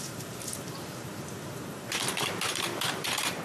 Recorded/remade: remade